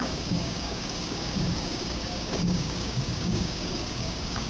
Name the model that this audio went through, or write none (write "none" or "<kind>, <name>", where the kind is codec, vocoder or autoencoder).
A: codec, DAC